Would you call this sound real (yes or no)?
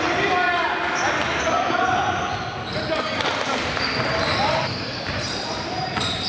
yes